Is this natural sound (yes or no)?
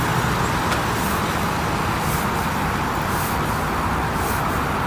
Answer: yes